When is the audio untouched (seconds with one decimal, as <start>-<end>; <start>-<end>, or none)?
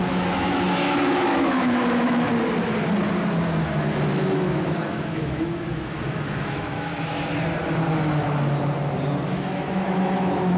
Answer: 2.3-4.1; 6.9-9.3